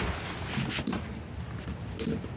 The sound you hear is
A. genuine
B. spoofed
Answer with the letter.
A